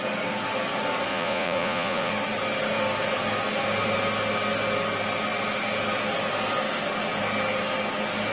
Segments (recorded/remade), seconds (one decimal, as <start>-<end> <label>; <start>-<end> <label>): 0.0-1.1 recorded; 1.1-2.1 remade; 2.1-8.3 recorded